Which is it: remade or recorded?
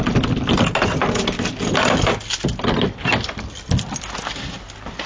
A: recorded